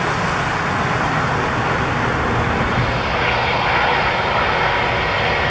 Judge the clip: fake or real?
real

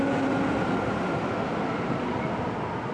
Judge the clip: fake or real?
fake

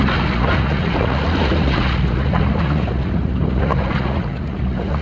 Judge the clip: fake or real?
fake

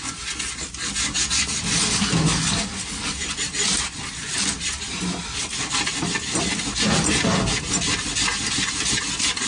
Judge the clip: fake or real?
real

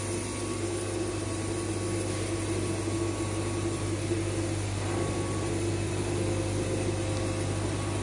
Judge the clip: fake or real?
real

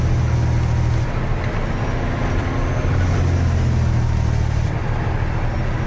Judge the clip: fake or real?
real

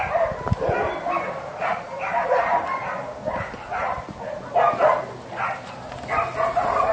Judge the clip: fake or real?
real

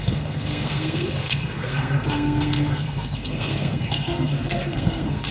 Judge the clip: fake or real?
fake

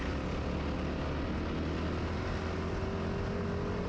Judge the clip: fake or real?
real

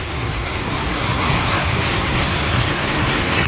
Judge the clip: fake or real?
fake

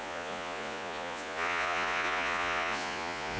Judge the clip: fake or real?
fake